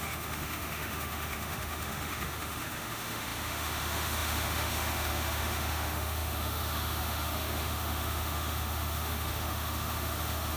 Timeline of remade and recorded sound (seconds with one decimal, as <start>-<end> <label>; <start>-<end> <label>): 0.0-10.6 remade